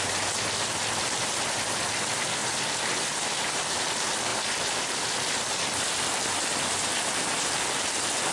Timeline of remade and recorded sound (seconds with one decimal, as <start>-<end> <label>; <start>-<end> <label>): 0.0-2.4 recorded; 2.4-3.9 remade; 3.9-4.3 recorded; 4.3-5.9 remade; 5.9-8.3 recorded